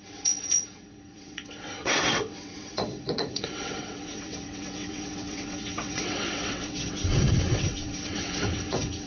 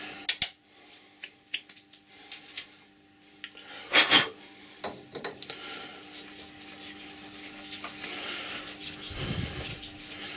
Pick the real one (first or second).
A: second